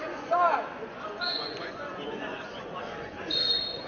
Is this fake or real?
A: fake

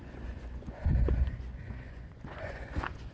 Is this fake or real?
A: fake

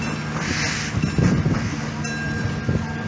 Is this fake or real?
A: real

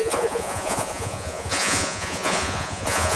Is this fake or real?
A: fake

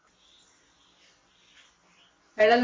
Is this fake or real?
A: real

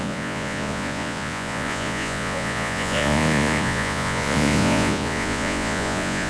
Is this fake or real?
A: fake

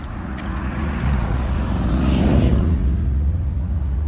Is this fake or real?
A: fake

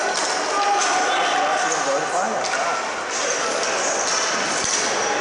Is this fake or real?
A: real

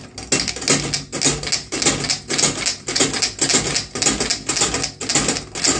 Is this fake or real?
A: real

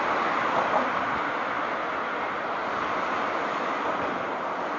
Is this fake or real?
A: real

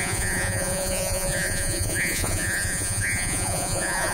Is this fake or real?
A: fake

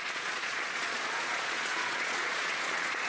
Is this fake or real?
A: fake